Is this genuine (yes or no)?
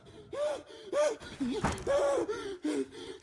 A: yes